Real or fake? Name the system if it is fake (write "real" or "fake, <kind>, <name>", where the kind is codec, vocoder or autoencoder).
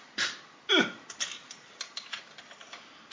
real